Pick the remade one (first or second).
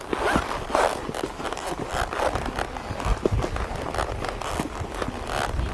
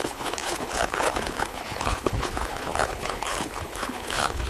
second